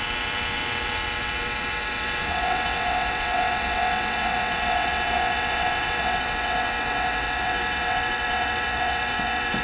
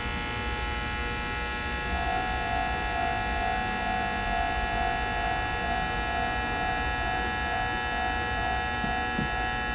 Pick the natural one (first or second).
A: second